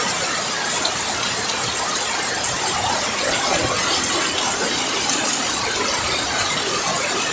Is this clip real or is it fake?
real